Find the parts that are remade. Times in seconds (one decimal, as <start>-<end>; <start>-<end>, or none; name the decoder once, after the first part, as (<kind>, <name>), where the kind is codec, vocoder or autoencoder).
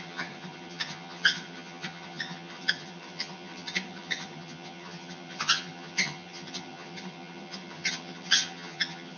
0.0-9.2 (vocoder, HiFi-GAN)